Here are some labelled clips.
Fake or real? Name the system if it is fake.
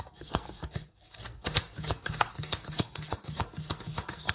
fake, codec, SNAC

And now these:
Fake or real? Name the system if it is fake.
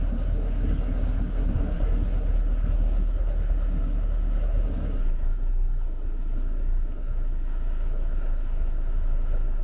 fake, codec, SNAC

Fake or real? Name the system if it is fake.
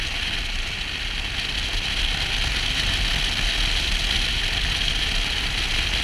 real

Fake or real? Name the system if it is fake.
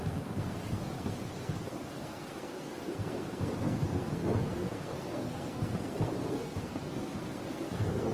fake, codec, SNAC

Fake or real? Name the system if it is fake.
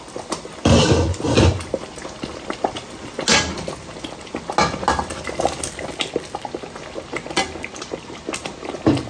real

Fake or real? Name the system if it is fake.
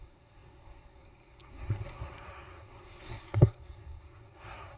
fake, codec, SNAC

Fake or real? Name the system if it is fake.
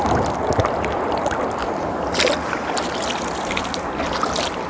real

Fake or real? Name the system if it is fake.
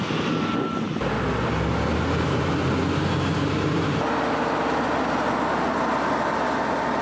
real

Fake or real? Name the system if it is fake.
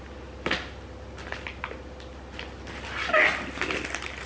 real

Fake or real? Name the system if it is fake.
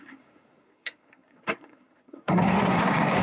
fake, codec, SNAC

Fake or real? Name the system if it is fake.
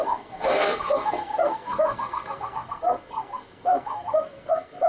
fake, codec, SNAC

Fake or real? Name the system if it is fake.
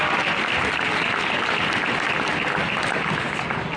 real